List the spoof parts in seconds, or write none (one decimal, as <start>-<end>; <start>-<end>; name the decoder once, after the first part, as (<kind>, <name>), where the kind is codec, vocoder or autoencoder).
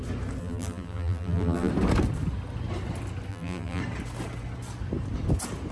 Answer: 0.4-1.7 (vocoder, BigVGAN v2); 3.3-3.8